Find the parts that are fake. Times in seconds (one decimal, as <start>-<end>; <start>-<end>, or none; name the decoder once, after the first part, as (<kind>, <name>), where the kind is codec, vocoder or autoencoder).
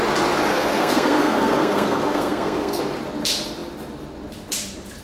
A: 0.5-2.8 (codec, SNAC)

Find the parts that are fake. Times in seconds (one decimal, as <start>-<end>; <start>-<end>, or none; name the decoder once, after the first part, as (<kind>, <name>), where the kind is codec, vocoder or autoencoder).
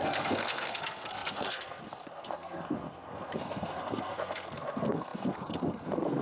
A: 0.0-6.2 (codec, SNAC)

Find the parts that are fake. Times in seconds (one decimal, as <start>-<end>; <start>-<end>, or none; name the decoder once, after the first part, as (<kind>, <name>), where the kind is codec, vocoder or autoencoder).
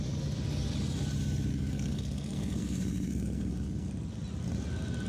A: 1.5-3.9 (codec, SNAC)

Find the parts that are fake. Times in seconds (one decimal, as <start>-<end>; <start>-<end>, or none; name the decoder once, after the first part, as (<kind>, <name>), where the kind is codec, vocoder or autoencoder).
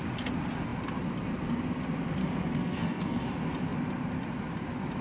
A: 2.2-3.2 (codec, SNAC)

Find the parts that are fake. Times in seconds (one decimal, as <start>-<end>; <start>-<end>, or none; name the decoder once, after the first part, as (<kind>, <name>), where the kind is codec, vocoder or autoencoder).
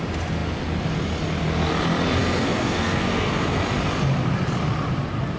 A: 2.2-3.3 (codec, SNAC)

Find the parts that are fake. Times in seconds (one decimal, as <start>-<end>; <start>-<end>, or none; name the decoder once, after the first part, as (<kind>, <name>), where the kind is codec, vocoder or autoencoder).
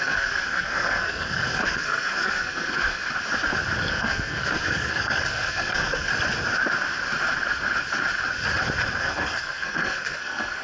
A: 0.0-3.0 (codec, SNAC); 3.9-6.1; 9.0-10.6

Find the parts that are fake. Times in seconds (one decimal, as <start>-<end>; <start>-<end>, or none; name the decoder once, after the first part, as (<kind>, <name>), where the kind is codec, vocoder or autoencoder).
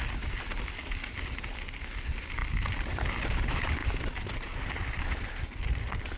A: none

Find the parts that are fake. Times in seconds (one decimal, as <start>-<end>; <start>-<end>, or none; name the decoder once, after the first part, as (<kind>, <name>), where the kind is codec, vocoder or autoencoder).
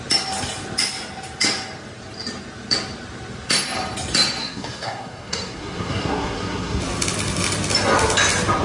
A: 4.4-6.8 (codec, SNAC)